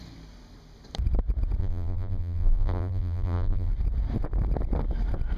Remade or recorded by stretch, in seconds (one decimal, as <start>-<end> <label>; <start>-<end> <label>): 0.0-1.6 recorded; 1.6-3.7 remade; 3.7-5.4 recorded